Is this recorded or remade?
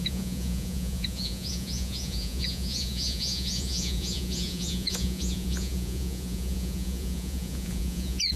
remade